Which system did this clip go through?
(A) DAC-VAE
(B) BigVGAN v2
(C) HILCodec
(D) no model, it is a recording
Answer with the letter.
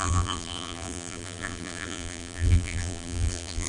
B